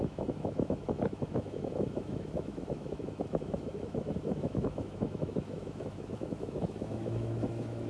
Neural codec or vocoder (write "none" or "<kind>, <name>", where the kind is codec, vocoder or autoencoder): autoencoder, DAC-VAE